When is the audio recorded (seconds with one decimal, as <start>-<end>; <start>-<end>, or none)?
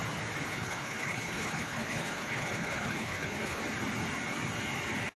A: 0.0-0.5; 3.6-5.2